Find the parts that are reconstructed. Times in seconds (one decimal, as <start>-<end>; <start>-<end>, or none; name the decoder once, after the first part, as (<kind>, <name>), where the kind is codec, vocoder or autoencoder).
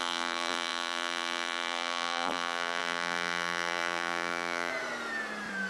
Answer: 0.0-4.7 (vocoder, BigVGAN v2)